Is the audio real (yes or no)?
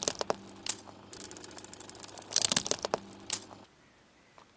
yes